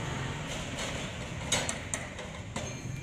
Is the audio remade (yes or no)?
no